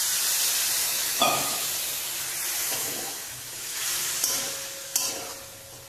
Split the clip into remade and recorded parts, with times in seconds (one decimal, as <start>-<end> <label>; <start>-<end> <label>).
0.0-0.8 recorded; 0.8-1.7 remade; 1.7-2.6 recorded; 2.6-3.8 remade; 3.8-5.9 recorded